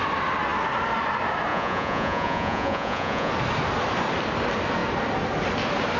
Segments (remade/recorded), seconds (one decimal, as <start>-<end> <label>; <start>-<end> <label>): 0.0-1.5 recorded; 1.5-3.3 remade; 3.3-6.0 recorded